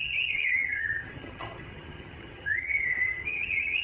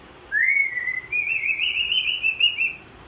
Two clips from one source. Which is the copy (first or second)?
first